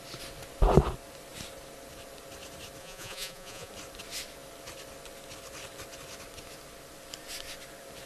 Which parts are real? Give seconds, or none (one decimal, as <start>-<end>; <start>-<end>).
0.0-2.8; 3.7-8.1